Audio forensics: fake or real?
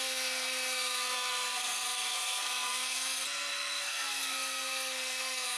fake